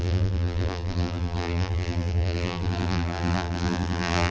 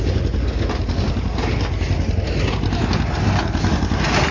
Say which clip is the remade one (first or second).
first